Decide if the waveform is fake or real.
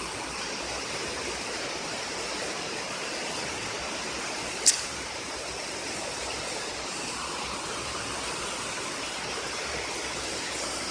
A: real